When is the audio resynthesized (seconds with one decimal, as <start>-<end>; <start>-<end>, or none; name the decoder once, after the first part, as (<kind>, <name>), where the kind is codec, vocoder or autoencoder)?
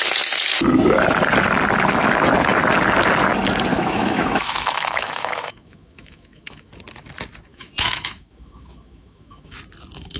3.7-6.7 (autoencoder, DAC-VAE); 7.5-9.6